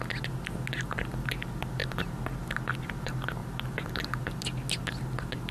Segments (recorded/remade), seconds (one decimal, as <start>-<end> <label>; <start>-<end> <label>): 0.0-3.4 recorded; 3.4-4.2 remade; 4.2-5.5 recorded